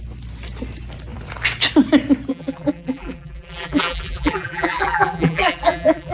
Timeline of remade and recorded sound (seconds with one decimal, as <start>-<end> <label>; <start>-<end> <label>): 0.0-2.3 recorded; 2.3-6.1 remade